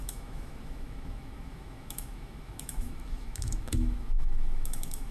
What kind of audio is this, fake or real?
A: fake